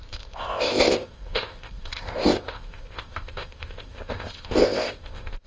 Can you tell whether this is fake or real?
fake